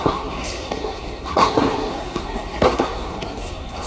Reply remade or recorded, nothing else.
remade